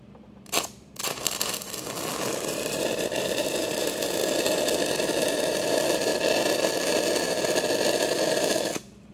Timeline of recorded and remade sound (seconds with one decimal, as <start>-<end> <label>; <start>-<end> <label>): 0.0-6.1 remade; 6.1-9.1 recorded